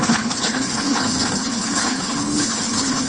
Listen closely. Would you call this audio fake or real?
fake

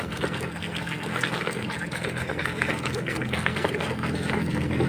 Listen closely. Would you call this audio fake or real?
fake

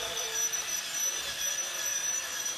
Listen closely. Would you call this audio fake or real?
real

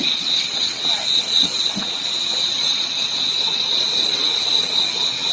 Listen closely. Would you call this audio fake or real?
fake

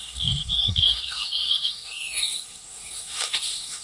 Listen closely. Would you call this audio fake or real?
fake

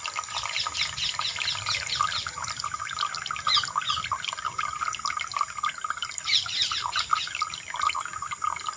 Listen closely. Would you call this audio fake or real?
real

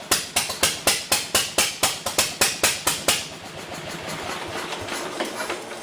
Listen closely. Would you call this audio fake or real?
real